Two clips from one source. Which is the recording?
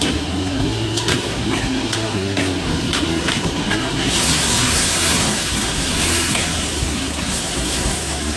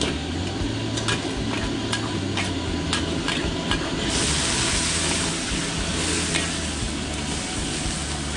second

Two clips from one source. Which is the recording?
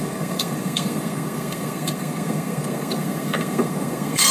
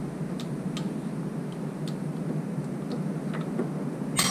second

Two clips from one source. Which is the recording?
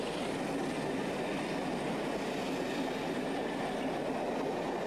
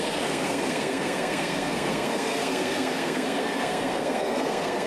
first